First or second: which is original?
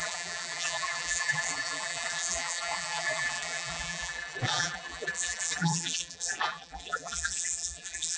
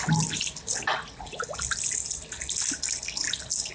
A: second